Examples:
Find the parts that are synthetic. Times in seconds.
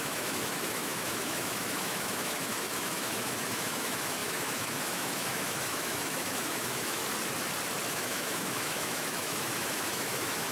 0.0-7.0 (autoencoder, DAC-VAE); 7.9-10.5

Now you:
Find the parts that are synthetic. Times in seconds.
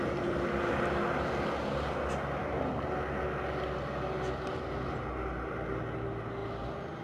none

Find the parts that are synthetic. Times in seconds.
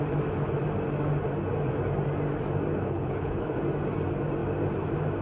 2.7-3.6 (codec, HILCodec)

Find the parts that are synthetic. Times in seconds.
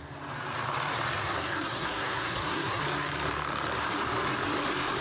1.2-2.8 (codec, SNAC)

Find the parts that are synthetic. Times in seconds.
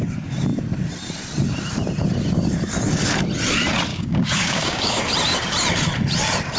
3.9-5.0 (codec, DAC)